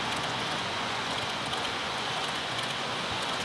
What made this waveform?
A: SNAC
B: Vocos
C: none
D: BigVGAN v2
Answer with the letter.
B